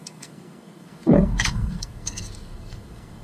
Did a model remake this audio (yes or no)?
yes